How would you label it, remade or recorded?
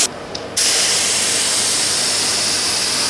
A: recorded